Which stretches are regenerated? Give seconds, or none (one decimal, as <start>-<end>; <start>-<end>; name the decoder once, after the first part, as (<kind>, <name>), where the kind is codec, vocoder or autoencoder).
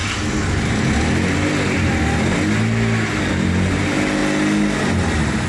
3.3-4.2 (vocoder, BigVGAN v2)